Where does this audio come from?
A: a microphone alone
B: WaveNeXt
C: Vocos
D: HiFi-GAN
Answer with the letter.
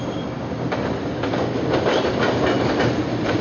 A